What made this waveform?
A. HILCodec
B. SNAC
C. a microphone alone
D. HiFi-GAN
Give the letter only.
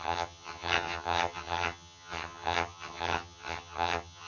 D